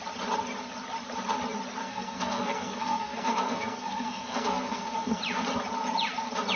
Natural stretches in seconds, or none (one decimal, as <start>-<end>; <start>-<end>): 0.0-1.8; 5.2-6.6